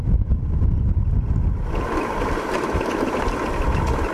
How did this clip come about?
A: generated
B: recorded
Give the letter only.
B